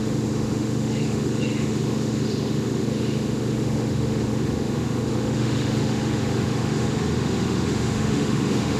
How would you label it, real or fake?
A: fake